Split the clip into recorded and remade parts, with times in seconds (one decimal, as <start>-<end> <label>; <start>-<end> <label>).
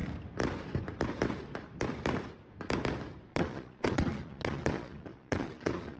0.0-3.3 recorded; 3.3-6.0 remade